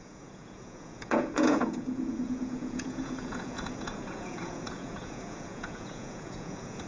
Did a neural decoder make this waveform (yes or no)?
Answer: yes